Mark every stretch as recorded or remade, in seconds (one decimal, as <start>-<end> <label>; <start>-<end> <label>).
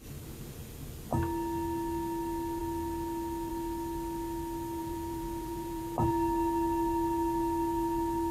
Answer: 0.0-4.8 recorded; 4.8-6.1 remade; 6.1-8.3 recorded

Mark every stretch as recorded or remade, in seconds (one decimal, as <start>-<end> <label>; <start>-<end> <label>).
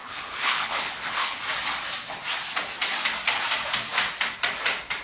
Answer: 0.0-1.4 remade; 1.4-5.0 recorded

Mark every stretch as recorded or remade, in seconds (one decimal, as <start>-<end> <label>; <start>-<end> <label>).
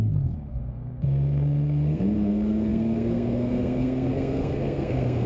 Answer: 0.0-5.3 remade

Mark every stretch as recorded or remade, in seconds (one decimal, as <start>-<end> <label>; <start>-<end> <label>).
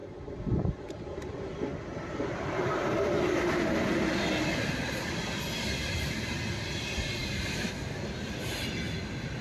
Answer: 0.0-9.4 recorded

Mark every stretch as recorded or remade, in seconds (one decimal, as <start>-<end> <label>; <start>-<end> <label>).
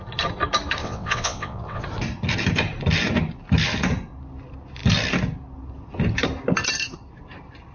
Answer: 0.0-0.8 recorded; 0.8-1.8 remade; 1.8-7.7 recorded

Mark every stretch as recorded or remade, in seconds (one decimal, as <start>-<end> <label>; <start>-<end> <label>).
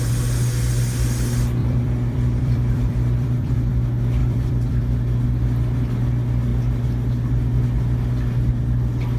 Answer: 0.0-1.6 recorded; 1.6-3.7 remade; 3.7-4.2 recorded; 4.2-4.8 remade; 4.8-9.2 recorded